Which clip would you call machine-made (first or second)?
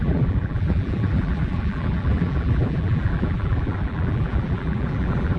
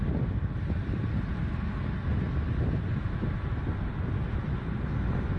first